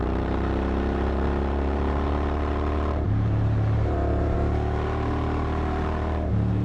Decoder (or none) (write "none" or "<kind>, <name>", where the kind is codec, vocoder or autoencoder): vocoder, BigVGAN v2